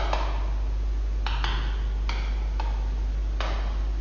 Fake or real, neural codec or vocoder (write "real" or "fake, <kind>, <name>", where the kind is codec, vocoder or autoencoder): real